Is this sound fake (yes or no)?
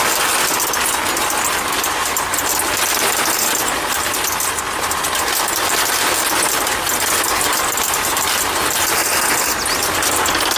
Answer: no